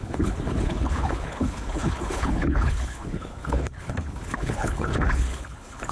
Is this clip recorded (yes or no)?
no